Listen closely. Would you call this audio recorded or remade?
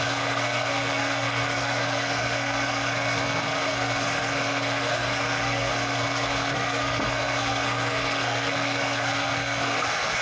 remade